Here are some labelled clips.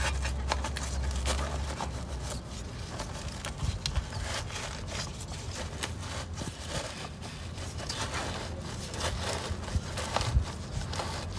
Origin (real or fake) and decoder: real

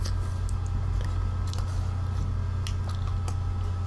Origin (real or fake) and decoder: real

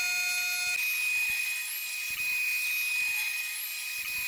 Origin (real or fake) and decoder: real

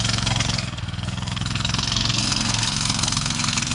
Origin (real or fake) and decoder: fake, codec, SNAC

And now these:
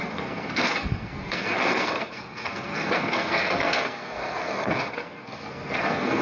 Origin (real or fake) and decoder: fake, codec, SNAC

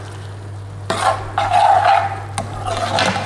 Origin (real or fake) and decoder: real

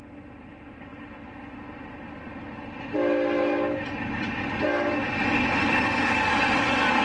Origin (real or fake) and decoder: real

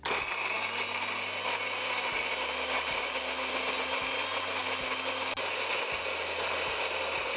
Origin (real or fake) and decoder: real